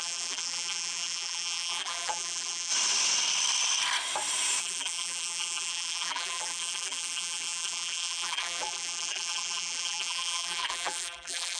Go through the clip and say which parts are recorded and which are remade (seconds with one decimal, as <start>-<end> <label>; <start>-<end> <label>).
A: 0.0-2.7 remade; 2.7-4.6 recorded; 4.6-11.6 remade